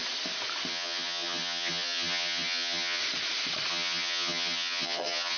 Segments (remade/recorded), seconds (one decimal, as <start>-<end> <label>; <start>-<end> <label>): 0.0-0.7 recorded; 0.7-3.0 remade; 3.0-3.7 recorded; 3.7-5.4 remade